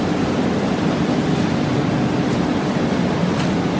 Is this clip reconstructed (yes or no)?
no